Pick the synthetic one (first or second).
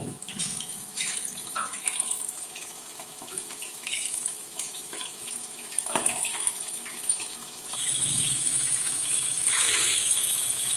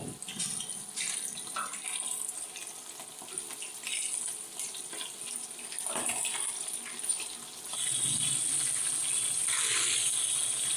first